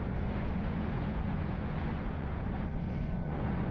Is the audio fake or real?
fake